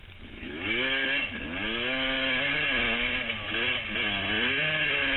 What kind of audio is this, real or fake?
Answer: real